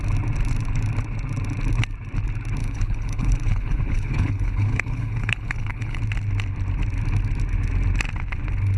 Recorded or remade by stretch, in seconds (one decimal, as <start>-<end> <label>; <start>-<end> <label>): 0.0-2.6 recorded; 2.6-6.0 remade; 6.0-8.8 recorded